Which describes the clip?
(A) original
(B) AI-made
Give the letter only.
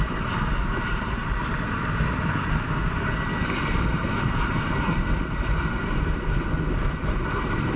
A